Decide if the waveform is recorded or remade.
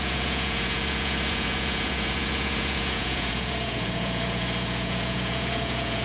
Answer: remade